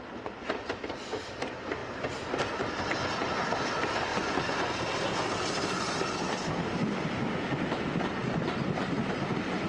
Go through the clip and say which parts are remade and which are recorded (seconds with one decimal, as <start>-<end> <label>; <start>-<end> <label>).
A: 0.0-4.1 recorded; 4.1-4.8 remade; 4.8-9.7 recorded